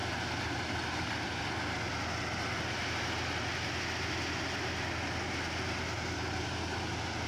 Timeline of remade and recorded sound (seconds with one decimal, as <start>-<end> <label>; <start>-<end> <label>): 0.0-7.3 recorded